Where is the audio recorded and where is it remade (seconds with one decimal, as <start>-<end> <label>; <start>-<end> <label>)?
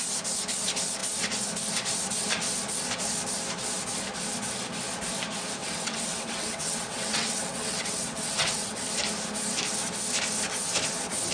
0.0-5.6 recorded; 5.6-8.9 remade; 8.9-11.3 recorded